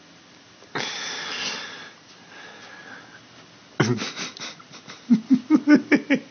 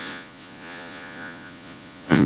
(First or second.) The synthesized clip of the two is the second